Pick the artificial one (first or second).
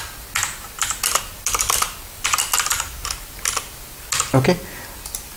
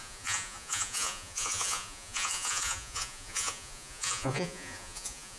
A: second